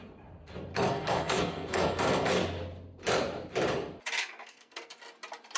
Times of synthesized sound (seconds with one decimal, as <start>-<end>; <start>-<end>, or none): 0.7-2.3; 4.2-5.0

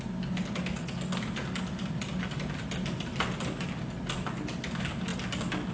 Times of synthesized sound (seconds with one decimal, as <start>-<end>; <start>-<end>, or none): none

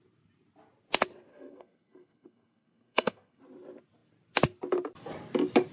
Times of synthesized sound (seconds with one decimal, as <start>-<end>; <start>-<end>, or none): 1.3-3.4

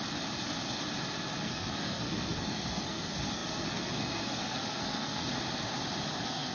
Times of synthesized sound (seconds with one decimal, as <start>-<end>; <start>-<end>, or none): 1.4-5.3; 6.1-6.5